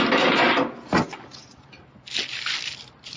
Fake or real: real